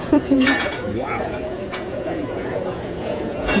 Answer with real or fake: fake